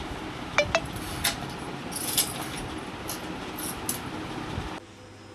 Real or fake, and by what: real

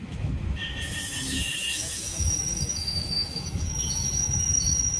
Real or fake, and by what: fake, autoencoder, DAC-VAE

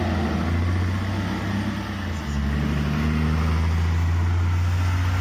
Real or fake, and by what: real